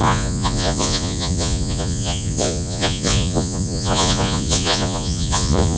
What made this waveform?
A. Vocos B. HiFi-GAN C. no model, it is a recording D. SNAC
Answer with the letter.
A